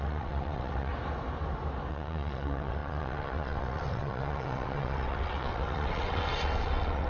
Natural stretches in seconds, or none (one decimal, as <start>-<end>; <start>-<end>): 0.9-1.9